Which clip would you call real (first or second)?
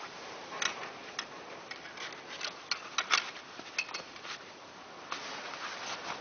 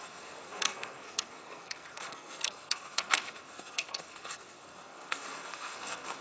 first